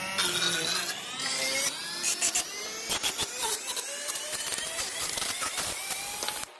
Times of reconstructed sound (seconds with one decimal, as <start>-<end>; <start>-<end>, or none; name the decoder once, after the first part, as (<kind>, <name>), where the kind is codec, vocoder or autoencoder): none